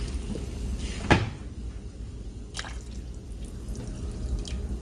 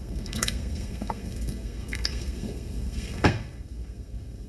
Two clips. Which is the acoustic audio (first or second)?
first